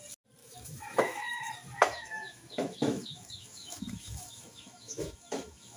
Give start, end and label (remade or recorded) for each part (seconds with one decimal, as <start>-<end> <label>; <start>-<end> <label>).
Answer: 0.0-0.4 recorded; 0.4-1.5 remade; 1.5-1.9 recorded; 1.9-5.8 remade